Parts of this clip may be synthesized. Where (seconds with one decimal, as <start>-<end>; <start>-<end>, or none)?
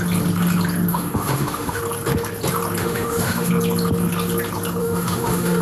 0.9-1.8; 2.8-3.5; 4.8-5.6